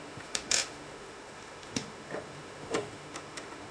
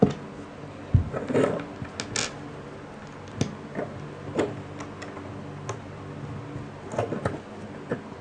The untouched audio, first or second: second